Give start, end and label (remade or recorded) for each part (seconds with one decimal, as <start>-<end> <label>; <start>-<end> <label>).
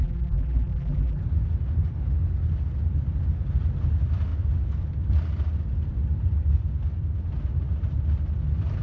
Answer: 0.0-1.2 remade; 1.2-8.8 recorded